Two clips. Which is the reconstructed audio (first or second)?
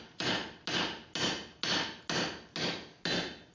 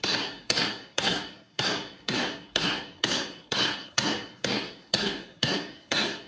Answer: second